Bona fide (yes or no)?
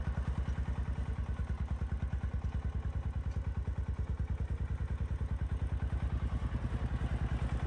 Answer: yes